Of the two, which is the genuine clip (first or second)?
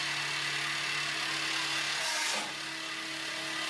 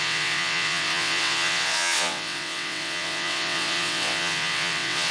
first